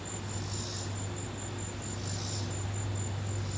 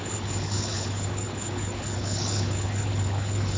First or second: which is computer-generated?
second